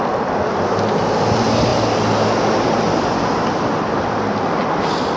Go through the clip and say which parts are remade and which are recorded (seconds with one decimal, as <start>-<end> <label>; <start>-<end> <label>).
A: 0.0-1.7 recorded; 1.7-4.8 remade; 4.8-5.2 recorded

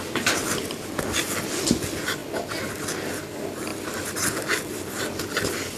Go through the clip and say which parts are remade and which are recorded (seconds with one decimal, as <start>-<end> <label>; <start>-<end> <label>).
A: 0.0-5.8 recorded

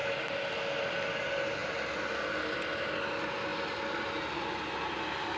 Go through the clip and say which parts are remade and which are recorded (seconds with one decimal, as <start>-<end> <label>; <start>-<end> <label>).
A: 0.0-3.5 recorded; 3.5-5.0 remade; 5.0-5.4 recorded

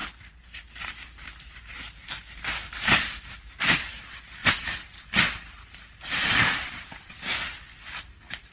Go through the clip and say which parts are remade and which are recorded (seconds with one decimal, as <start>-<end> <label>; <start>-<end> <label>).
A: 0.0-7.3 remade; 7.3-8.5 recorded

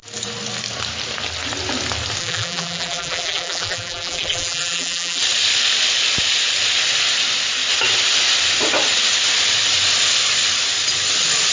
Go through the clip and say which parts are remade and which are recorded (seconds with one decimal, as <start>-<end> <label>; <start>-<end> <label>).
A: 0.0-2.2 recorded; 2.2-5.2 remade; 5.2-11.5 recorded

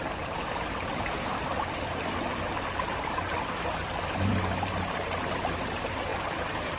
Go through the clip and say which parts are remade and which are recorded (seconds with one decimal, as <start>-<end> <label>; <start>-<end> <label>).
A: 0.0-1.5 remade; 1.5-5.6 recorded; 5.6-6.8 remade

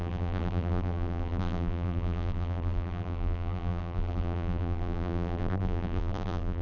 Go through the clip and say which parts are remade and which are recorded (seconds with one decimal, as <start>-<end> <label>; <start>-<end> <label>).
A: 0.0-6.6 remade

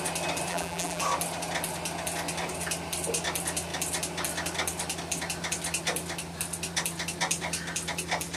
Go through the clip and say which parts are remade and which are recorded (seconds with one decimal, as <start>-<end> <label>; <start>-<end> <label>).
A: 0.0-0.5 recorded; 0.5-1.0 remade; 1.0-8.4 recorded